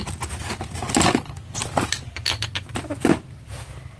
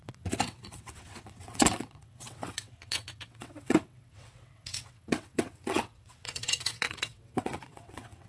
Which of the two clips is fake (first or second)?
second